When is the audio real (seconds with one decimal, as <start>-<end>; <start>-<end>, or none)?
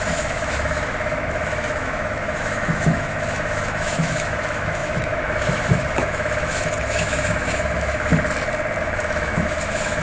8.1-8.8